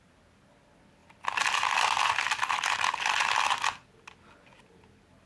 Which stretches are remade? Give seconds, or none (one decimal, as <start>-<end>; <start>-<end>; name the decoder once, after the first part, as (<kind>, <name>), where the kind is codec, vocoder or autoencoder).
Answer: none

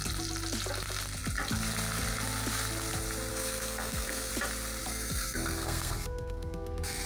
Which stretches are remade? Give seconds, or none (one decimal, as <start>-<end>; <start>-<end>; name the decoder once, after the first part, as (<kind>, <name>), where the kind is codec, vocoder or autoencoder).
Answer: 3.3-4.3 (codec, SNAC); 4.8-7.1

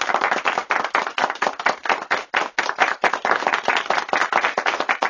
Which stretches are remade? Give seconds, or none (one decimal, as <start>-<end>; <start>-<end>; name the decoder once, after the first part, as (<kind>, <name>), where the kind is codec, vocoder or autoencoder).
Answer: none

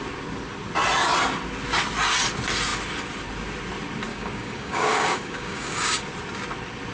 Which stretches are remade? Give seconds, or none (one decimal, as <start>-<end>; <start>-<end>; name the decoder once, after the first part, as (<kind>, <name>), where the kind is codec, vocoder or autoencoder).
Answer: 4.1-6.0 (codec, DAC)

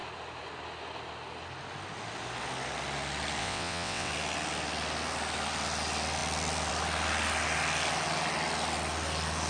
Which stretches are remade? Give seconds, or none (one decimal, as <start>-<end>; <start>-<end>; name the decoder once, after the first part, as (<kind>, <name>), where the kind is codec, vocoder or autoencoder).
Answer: 3.4-4.1 (vocoder, WaveNeXt)

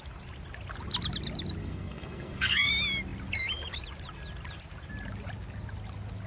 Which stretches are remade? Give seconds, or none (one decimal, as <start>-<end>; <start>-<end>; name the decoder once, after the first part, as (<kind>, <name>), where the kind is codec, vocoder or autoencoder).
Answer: 1.6-2.7 (codec, SNAC)

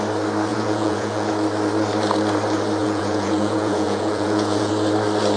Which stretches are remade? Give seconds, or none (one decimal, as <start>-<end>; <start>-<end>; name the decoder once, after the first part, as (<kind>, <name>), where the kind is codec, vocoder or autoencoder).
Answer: 0.5-1.3 (vocoder, Vocos); 2.8-4.7

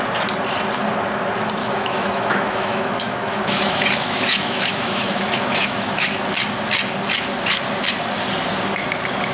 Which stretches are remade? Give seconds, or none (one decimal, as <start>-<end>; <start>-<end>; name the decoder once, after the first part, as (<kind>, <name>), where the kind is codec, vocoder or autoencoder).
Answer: 1.6-6.2 (autoencoder, DAC-VAE)